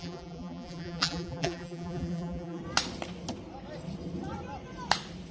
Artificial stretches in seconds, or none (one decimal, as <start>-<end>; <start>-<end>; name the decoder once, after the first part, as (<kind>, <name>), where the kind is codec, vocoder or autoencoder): 0.0-2.6 (vocoder, BigVGAN v2)